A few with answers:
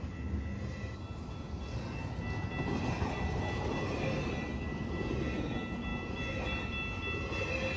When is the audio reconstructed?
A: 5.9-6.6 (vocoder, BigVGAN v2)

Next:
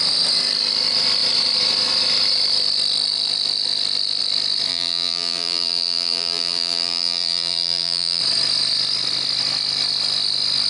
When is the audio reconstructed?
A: 4.7-8.2 (vocoder, BigVGAN v2)

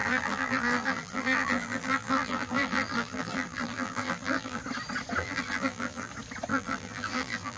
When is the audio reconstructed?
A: 0.0-4.6 (vocoder, BigVGAN v2); 5.2-6.1; 6.5-7.6

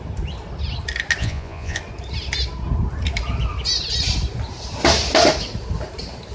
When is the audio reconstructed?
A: 1.2-1.8 (vocoder, Vocos)

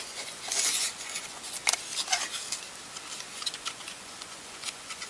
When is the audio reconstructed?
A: 0.0-1.6 (vocoder, Vocos); 3.2-5.1

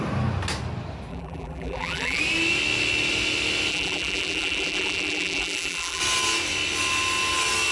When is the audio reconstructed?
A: 1.1-2.2 (vocoder, BigVGAN v2); 3.7-6.0

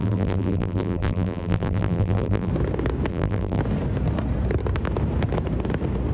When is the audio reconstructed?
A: 0.0-2.5 (vocoder, BigVGAN v2); 3.1-3.6

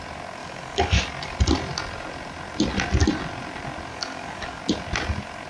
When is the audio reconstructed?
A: 0.4-1.0 (codec, DAC); 3.9-4.6